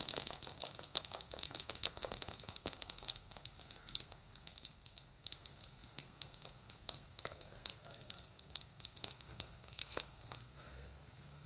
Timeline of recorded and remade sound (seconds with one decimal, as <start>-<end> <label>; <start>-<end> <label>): 0.0-11.5 remade